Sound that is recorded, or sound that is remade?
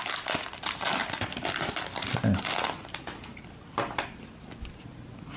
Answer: recorded